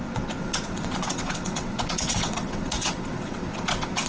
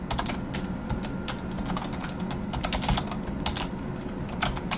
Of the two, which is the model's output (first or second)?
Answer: first